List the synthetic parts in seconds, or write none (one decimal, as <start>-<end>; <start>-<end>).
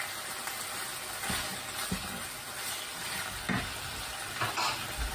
1.5-4.3